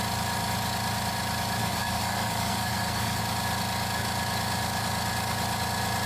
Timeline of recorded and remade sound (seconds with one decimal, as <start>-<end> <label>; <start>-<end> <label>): 0.0-1.6 recorded; 1.6-3.2 remade; 3.2-6.1 recorded